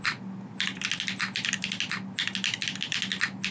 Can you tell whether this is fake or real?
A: real